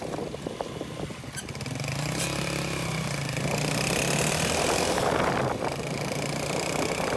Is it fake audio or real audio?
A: real